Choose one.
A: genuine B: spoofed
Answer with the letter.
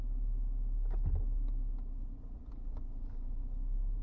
A